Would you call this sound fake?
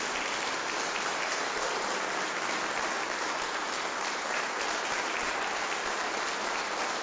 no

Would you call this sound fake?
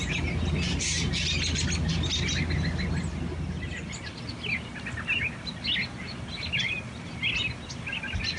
no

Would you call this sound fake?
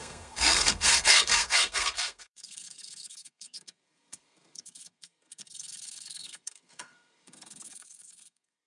yes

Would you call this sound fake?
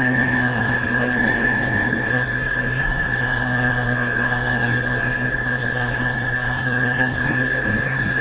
yes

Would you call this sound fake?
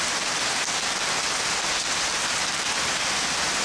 no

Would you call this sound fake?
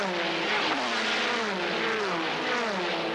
no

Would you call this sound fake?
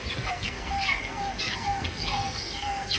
yes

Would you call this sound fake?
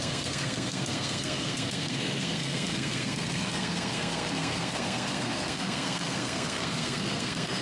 yes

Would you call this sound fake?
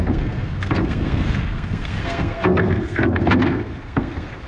yes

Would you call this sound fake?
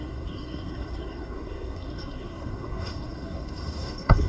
yes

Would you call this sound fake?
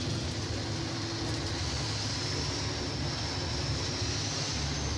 no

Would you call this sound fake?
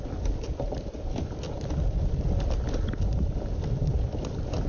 no